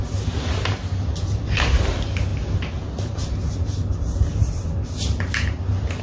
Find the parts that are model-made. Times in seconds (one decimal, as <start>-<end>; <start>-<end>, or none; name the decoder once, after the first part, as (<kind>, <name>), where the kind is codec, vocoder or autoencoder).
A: none